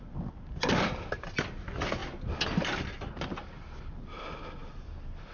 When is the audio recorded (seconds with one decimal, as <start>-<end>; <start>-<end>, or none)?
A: 0.0-5.3